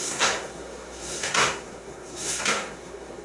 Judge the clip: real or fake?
fake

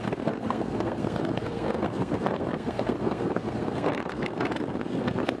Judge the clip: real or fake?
fake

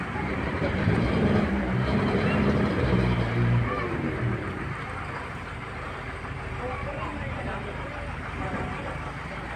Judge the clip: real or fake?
fake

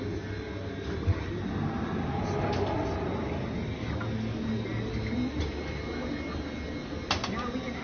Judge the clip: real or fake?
real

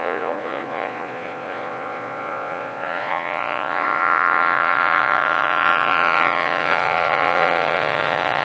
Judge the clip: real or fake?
fake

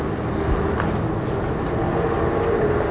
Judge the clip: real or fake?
real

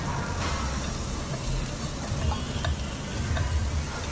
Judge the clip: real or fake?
real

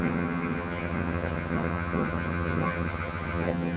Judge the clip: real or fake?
fake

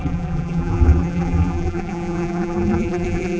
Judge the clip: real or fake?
fake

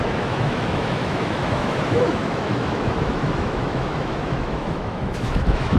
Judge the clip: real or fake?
fake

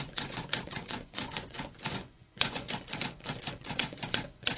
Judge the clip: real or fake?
fake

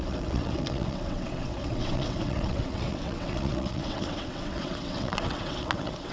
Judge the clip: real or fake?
fake